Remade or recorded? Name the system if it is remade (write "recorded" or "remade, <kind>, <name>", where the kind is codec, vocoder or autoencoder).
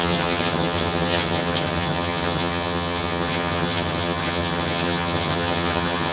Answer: remade, vocoder, HiFi-GAN